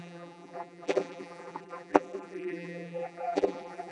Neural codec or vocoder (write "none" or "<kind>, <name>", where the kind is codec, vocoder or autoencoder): vocoder, BigVGAN v2